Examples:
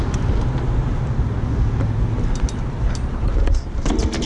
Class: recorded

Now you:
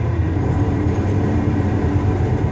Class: remade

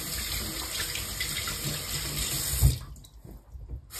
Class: recorded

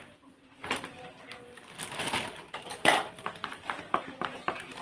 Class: remade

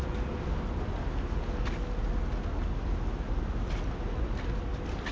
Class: recorded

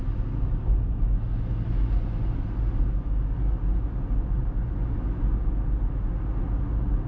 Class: recorded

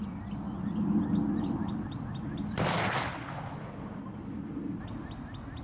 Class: recorded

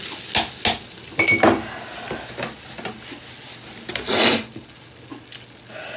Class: recorded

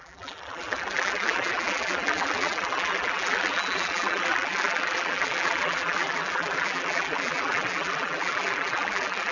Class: remade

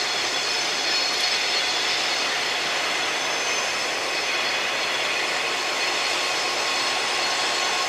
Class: recorded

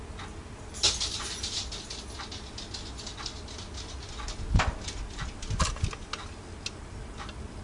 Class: recorded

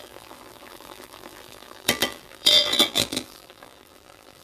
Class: remade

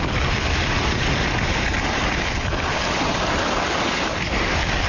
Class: recorded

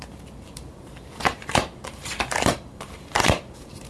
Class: remade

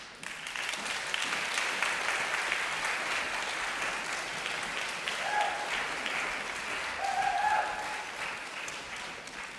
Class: recorded